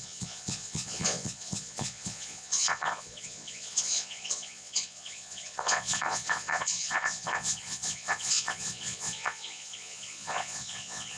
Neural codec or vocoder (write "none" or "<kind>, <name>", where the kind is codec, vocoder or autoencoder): vocoder, Vocos